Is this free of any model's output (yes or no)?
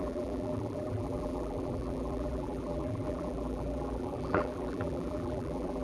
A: no